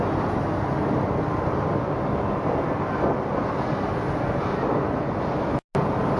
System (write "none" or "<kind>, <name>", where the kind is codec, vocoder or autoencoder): none